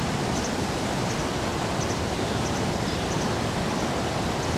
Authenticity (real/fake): real